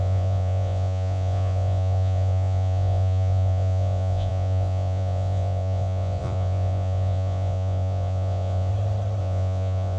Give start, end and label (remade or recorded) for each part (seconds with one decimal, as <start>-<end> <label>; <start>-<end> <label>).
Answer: 0.0-8.7 remade; 8.7-9.2 recorded; 9.2-10.0 remade